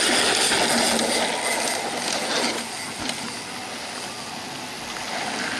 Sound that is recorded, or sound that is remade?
recorded